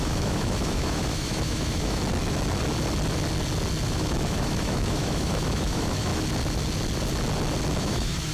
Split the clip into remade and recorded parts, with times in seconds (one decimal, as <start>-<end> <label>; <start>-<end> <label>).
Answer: 0.0-2.0 remade; 2.0-3.9 recorded; 3.9-6.1 remade; 6.1-7.8 recorded; 7.8-8.3 remade